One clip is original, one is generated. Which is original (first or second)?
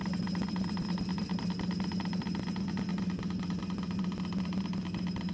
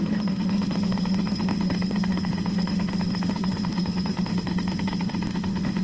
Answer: first